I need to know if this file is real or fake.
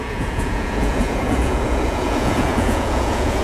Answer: fake